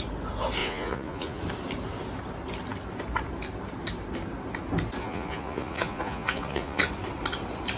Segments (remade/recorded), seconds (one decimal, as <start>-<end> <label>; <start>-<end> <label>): 0.0-0.6 recorded; 0.6-1.4 remade; 1.4-5.0 recorded; 5.0-6.9 remade; 6.9-7.8 recorded